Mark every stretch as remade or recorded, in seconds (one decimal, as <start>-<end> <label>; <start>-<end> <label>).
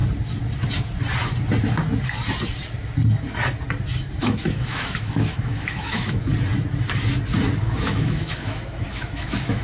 0.0-4.2 recorded; 4.2-6.3 remade; 6.3-7.6 recorded; 7.6-9.6 remade